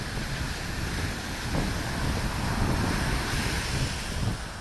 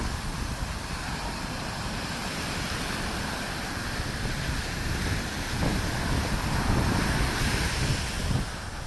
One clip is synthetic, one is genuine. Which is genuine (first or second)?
first